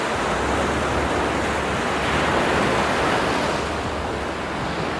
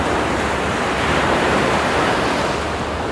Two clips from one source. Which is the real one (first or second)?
first